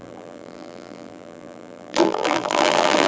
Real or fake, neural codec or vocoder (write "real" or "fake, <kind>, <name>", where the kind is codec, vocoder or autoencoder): fake, vocoder, BigVGAN v2